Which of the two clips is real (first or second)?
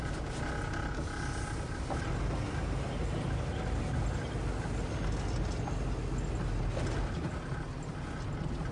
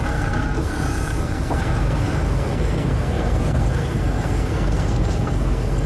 first